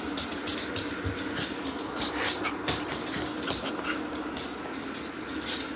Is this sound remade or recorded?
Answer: recorded